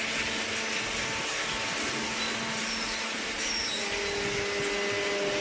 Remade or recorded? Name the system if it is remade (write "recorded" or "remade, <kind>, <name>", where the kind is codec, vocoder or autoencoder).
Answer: recorded